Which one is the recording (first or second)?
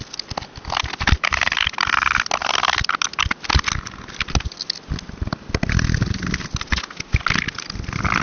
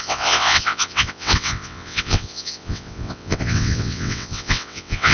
first